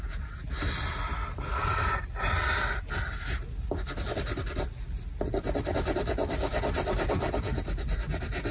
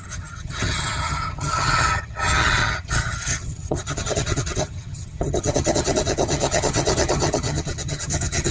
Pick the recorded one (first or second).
first